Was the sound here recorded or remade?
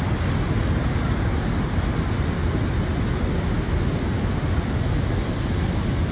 recorded